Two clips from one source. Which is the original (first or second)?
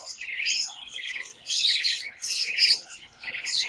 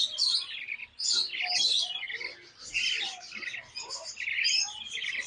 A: second